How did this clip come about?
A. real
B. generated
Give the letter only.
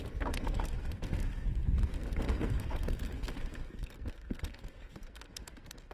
B